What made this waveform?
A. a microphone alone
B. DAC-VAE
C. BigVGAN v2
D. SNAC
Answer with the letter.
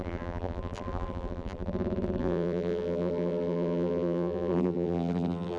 C